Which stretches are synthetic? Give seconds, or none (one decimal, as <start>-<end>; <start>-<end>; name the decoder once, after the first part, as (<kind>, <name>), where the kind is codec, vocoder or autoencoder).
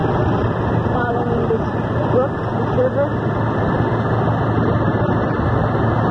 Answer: none